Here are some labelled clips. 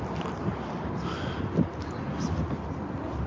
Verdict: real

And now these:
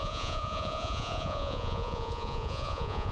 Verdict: fake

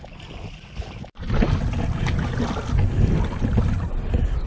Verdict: real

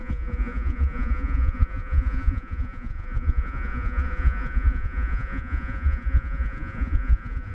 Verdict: fake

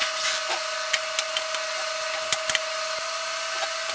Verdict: real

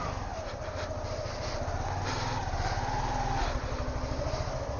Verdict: real